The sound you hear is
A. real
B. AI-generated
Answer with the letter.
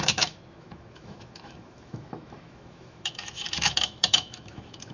B